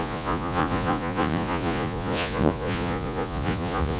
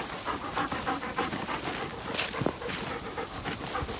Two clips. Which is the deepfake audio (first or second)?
first